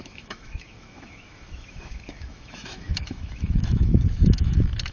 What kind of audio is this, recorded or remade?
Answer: remade